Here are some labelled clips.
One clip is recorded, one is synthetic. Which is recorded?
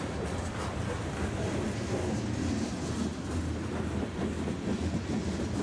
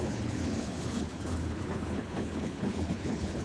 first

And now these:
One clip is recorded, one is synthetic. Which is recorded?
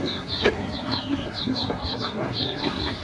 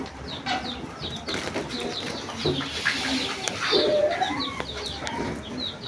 second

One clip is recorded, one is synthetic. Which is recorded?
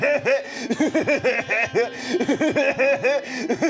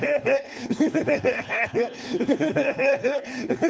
first